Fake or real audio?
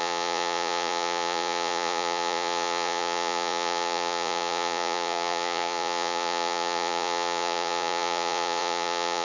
fake